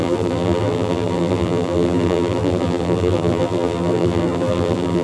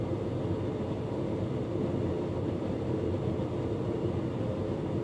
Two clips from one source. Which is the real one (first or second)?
second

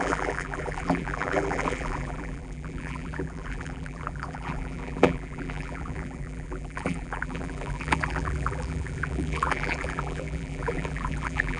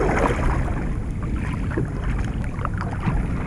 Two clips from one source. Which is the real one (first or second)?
second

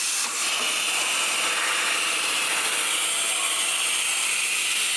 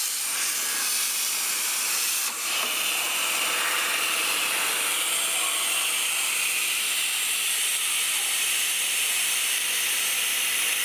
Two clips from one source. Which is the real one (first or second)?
first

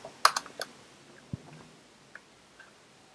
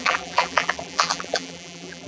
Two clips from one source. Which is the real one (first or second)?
first